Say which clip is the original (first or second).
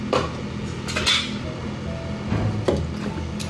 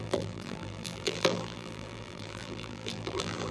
first